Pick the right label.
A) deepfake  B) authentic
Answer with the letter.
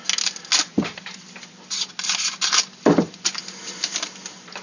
B